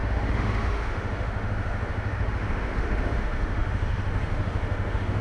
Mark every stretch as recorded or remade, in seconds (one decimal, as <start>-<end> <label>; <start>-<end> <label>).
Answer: 0.0-5.2 remade